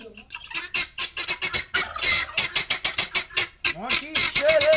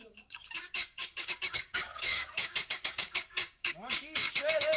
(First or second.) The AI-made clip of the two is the second